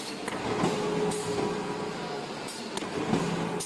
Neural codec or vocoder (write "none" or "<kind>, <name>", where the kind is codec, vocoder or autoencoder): none